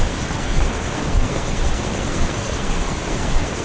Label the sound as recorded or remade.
remade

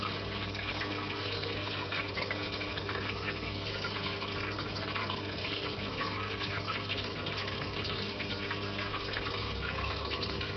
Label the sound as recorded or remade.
remade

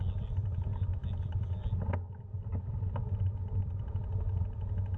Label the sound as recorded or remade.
recorded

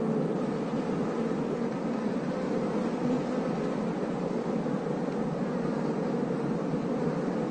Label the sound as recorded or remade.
recorded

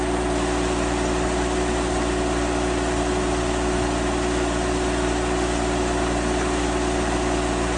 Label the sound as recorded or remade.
recorded